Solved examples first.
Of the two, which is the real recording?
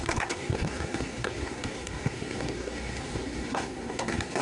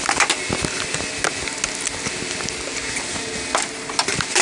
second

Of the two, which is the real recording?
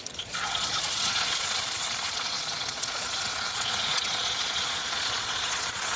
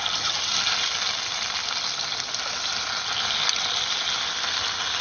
second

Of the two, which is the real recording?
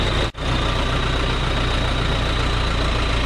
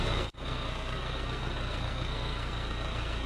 first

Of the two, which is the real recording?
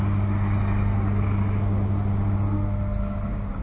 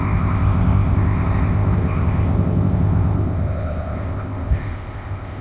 first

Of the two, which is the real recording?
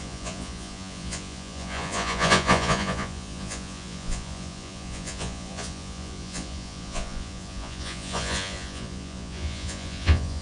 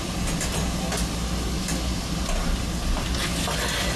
second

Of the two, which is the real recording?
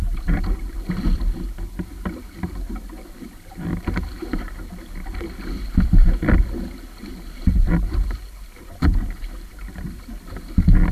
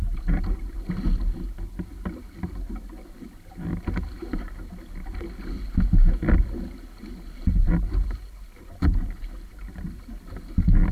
second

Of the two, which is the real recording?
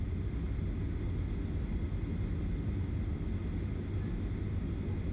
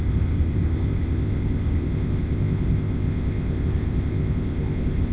first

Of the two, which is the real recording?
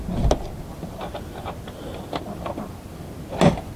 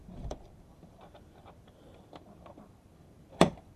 first